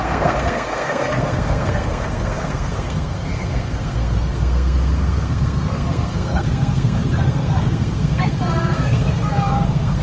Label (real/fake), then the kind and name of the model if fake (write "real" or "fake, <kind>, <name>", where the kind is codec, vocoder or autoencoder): fake, codec, SNAC